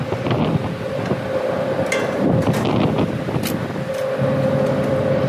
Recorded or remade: recorded